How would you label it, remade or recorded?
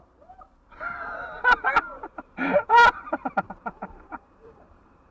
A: remade